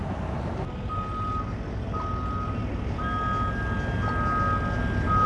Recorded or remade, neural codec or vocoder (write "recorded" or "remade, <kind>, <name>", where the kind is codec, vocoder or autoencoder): recorded